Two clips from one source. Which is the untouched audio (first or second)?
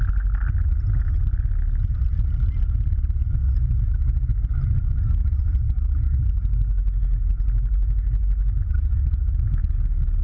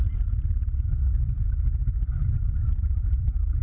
first